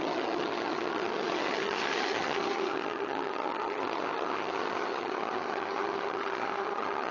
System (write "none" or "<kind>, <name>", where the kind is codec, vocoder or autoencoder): vocoder, HiFi-GAN